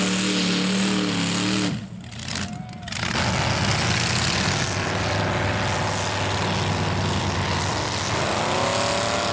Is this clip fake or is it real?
real